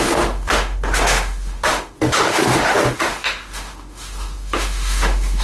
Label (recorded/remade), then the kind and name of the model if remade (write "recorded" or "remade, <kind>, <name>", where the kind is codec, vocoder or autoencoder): remade, autoencoder, DAC-VAE